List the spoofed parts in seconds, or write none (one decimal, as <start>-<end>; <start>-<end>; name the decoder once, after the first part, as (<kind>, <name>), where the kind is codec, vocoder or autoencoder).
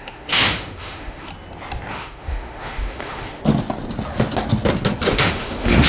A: 0.0-1.3 (autoencoder, DAC-VAE); 1.9-3.4; 5.1-5.9